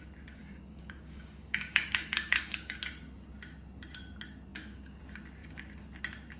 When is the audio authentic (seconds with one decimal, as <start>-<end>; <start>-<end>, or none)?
0.0-0.4; 2.8-4.5; 5.0-6.4